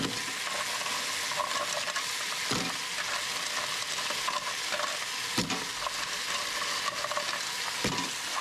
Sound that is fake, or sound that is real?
real